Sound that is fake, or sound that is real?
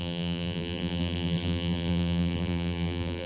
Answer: fake